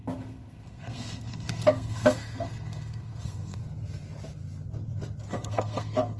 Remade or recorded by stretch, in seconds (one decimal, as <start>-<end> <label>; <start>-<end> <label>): 0.0-3.6 remade; 3.6-5.3 recorded; 5.3-6.2 remade